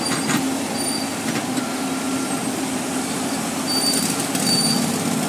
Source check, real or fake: real